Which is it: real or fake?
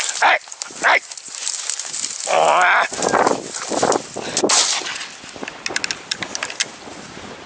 real